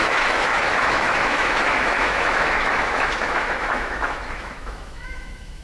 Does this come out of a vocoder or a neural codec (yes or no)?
yes